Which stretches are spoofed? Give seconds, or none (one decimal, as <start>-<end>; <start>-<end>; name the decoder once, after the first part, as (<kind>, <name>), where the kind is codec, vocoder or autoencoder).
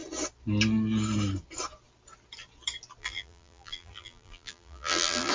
3.0-5.3 (vocoder, BigVGAN v2)